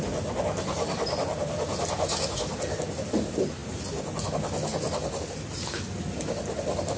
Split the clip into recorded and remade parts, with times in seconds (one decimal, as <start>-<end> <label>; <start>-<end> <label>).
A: 0.0-7.0 recorded

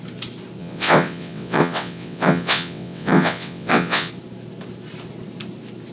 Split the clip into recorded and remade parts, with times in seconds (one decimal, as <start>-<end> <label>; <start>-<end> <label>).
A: 0.0-0.6 recorded; 0.6-4.1 remade; 4.1-5.9 recorded

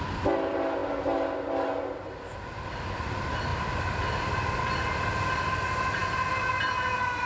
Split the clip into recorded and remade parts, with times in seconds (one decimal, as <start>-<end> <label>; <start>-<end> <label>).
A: 0.0-7.3 recorded

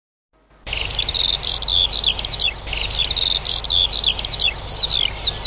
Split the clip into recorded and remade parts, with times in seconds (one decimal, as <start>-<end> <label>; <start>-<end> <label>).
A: 0.0-5.5 recorded

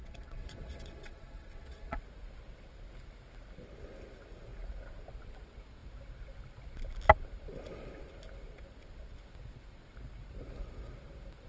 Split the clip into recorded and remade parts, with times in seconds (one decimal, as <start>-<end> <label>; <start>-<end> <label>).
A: 0.0-2.0 remade; 2.0-11.5 recorded

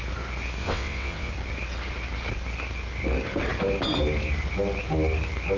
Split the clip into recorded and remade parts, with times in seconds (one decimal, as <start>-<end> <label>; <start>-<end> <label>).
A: 0.0-0.6 recorded; 0.6-1.3 remade; 1.3-5.6 recorded

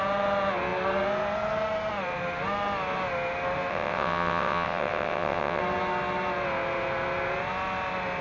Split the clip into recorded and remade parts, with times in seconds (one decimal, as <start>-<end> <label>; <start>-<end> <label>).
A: 0.0-3.7 recorded; 3.7-5.6 remade; 5.6-8.2 recorded

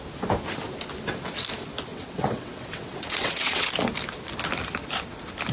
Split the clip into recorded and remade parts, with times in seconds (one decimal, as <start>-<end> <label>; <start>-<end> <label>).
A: 0.0-1.9 recorded; 1.9-3.7 remade; 3.7-5.5 recorded